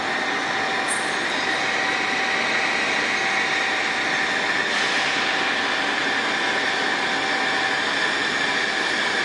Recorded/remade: recorded